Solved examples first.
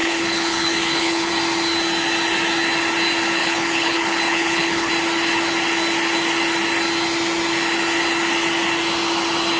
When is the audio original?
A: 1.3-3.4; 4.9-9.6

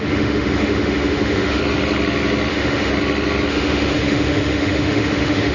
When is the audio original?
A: 1.6-2.5; 2.9-3.5

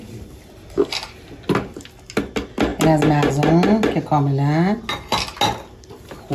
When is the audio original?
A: 0.0-6.3

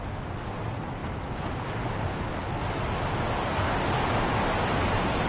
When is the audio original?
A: 0.0-5.3